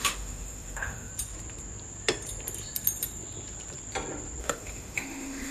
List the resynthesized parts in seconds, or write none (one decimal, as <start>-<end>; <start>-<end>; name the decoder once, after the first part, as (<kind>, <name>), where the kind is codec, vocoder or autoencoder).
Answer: 0.0-1.1 (autoencoder, DAC-VAE); 4.4-5.5